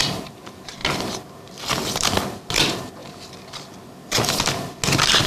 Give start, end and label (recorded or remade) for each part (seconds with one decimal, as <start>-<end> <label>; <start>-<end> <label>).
0.0-5.3 recorded